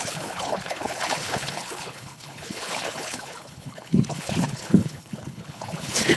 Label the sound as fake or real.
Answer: fake